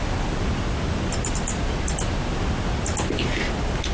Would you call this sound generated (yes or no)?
no